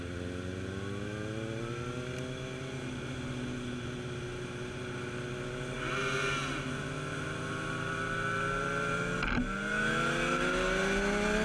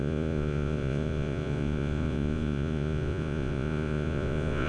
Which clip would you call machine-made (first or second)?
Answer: second